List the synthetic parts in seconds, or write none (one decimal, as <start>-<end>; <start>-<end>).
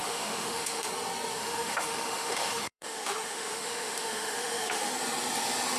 0.0-0.9; 1.4-4.9